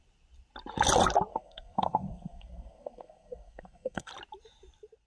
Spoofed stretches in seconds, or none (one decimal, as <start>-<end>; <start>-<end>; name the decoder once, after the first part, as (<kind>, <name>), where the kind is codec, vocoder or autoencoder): 1.3-4.1 (codec, SNAC)